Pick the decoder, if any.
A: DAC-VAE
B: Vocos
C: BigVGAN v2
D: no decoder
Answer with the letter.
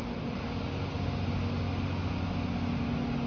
D